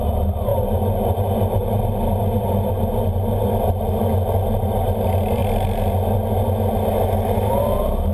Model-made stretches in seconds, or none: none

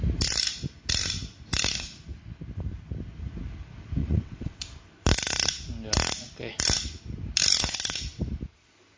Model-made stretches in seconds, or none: 4.0-4.6 (vocoder, WaveNeXt)